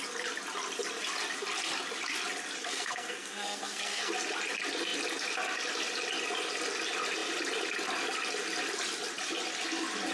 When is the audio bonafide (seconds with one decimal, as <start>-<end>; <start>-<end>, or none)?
0.0-2.6; 4.1-10.1